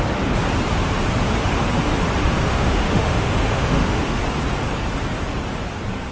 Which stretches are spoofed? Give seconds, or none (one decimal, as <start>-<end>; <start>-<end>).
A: 2.2-4.2